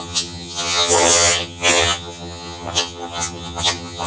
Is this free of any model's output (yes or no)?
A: no